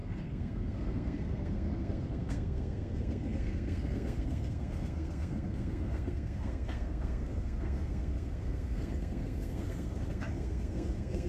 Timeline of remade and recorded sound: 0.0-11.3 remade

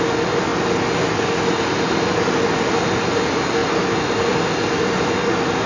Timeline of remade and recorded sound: 0.0-5.7 recorded